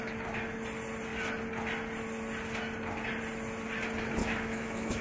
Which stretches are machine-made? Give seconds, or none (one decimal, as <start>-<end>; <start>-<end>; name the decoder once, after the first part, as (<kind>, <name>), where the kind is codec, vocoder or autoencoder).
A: 4.2-5.0 (autoencoder, DAC-VAE)